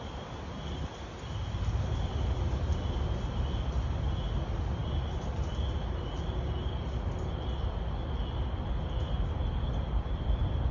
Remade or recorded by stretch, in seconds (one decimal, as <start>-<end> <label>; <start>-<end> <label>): 0.0-10.7 recorded